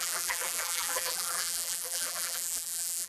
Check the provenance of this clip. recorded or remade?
remade